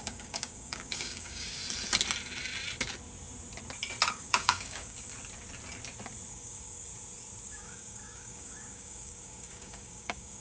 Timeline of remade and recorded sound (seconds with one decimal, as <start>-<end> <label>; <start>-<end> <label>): 0.0-1.6 remade; 1.6-4.1 recorded; 4.1-5.1 remade; 5.1-6.3 recorded; 6.3-6.9 remade; 6.9-7.4 recorded; 7.4-10.4 remade